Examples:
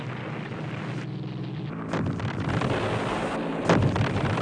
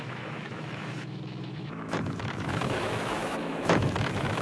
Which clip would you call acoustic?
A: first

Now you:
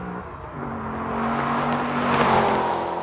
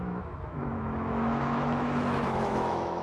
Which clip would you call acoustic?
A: first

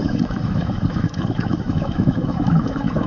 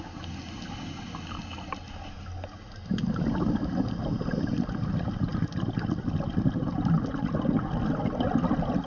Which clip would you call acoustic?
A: second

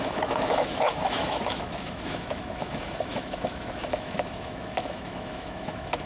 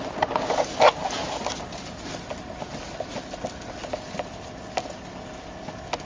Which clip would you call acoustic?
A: second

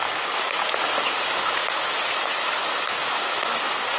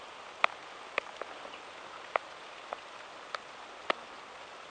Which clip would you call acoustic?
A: second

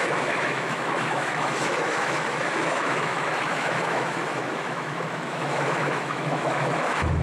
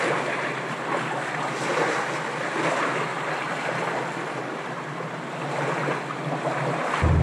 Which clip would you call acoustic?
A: second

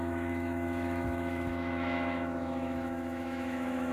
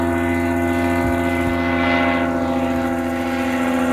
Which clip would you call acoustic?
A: second